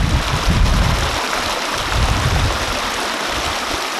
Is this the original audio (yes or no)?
yes